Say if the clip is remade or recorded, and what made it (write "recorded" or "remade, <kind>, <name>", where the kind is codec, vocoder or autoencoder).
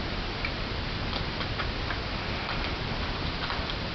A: recorded